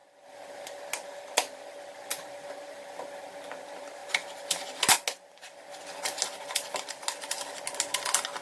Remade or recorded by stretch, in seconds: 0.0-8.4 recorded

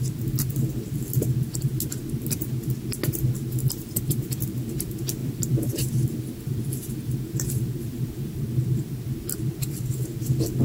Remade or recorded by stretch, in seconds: 0.0-3.6 recorded; 3.6-4.2 remade; 4.2-5.2 recorded; 5.2-8.4 remade; 8.4-10.6 recorded

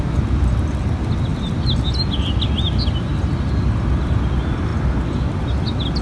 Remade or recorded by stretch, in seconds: 0.0-6.0 recorded